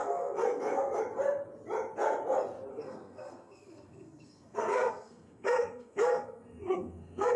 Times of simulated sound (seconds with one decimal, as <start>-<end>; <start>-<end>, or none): 0.0-1.0; 2.7-7.4